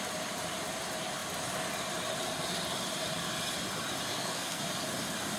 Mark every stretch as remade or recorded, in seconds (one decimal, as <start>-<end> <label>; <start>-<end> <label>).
0.0-4.1 recorded; 4.1-4.6 remade; 4.6-5.4 recorded

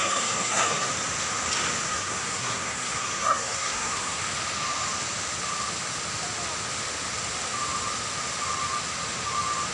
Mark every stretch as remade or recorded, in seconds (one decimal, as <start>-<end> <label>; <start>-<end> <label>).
0.0-0.9 remade; 0.9-1.9 recorded; 1.9-4.2 remade; 4.2-9.7 recorded

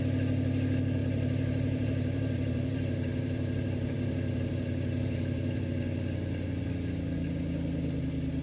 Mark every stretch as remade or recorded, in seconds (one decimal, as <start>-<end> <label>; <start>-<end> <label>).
0.0-1.0 recorded; 1.0-5.6 remade; 5.6-8.4 recorded

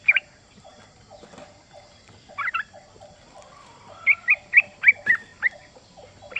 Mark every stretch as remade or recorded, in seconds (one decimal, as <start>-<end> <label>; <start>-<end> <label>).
0.0-5.3 remade; 5.3-6.0 recorded; 6.0-6.4 remade

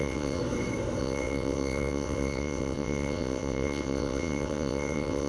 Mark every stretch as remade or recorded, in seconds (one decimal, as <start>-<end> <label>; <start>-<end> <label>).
0.0-0.4 remade; 0.4-1.0 recorded; 1.0-5.3 remade

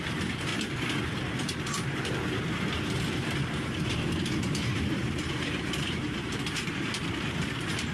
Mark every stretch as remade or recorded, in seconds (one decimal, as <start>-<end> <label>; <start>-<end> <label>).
0.0-0.5 remade; 0.5-3.1 recorded; 3.1-7.9 remade

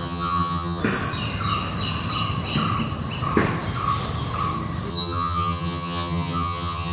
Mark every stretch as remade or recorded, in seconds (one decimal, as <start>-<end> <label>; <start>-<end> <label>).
0.0-0.8 remade; 0.8-4.9 recorded; 4.9-6.9 remade

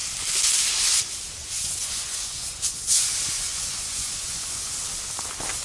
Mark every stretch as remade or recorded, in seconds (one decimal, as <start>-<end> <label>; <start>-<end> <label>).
0.0-1.4 recorded; 1.4-4.8 remade; 4.8-5.6 recorded